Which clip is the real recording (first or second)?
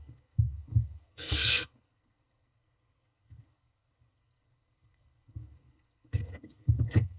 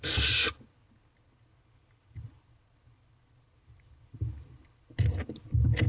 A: second